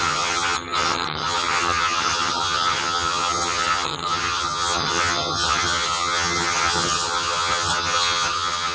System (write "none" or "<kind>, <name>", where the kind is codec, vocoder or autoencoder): vocoder, HiFi-GAN